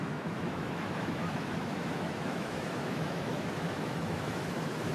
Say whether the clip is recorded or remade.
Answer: remade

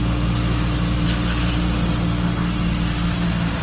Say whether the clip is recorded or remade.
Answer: recorded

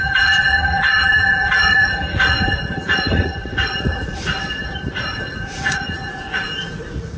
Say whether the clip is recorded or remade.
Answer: remade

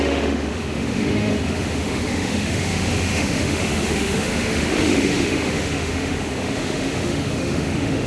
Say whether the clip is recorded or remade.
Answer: remade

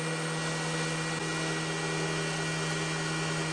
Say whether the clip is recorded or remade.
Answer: recorded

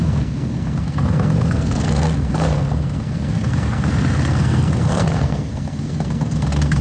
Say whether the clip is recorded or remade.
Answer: remade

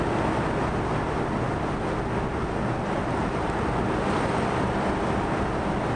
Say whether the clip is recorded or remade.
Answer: recorded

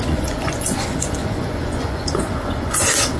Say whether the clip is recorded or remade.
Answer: remade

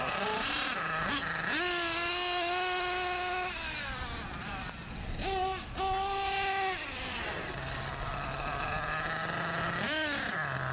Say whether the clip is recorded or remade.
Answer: recorded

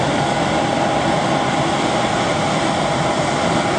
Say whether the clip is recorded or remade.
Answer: recorded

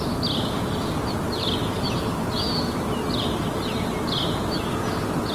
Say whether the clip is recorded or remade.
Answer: recorded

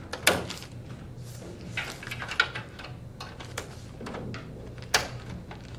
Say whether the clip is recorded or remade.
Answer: recorded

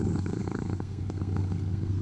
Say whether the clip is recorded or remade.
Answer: remade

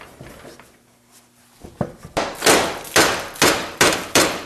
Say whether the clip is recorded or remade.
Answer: recorded